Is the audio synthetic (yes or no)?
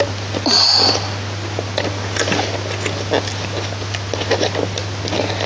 no